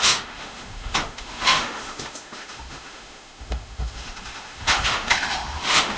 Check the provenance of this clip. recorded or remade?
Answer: remade